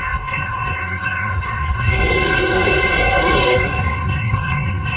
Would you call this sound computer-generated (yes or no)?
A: yes